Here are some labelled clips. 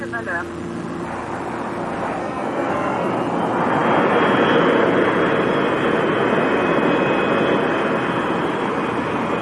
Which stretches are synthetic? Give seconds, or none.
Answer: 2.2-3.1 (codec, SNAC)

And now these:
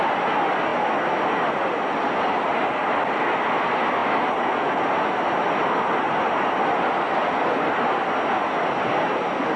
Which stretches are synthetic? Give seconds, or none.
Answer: none

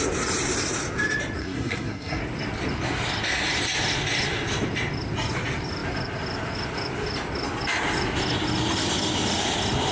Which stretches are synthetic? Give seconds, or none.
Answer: 1.4-2.2 (codec, SNAC)

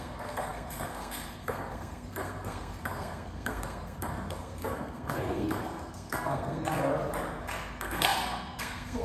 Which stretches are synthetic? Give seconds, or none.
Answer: 0.0-6.9 (codec, SNAC); 7.4-9.0

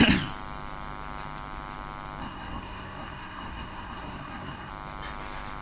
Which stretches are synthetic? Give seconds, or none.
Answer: 2.2-4.7 (codec, SNAC)

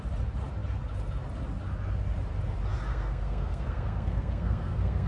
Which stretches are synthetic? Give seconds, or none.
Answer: 2.9-5.1 (codec, SNAC)

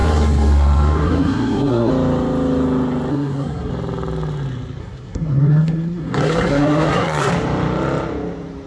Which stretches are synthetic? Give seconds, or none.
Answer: 0.0-1.9 (codec, SNAC); 3.1-3.7; 4.8-7.3

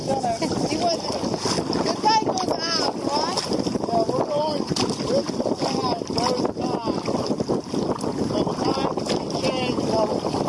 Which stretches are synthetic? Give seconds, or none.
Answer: none